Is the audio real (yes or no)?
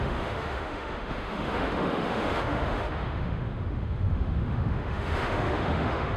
no